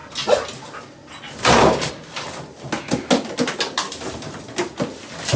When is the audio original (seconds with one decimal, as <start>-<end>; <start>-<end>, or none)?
0.0-5.4